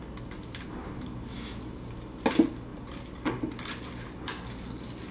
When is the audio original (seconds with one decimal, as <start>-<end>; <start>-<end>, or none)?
0.0-5.1